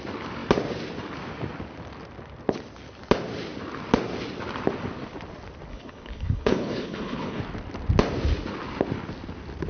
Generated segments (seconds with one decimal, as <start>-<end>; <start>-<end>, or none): 5.7-7.4